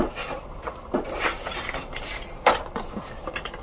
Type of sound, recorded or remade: remade